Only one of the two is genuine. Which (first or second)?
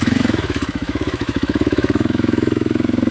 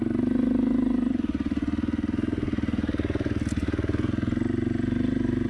second